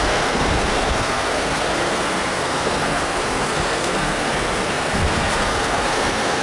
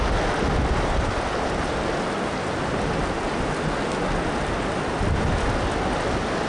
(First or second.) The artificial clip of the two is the first